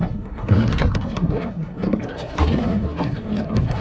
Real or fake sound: fake